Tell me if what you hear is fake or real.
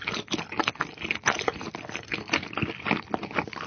real